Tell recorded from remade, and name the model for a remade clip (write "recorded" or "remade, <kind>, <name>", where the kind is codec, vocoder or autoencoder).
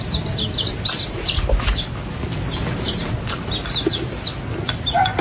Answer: recorded